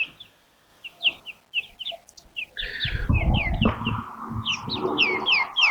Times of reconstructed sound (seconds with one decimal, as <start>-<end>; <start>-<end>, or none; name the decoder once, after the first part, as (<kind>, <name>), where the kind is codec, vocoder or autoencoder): none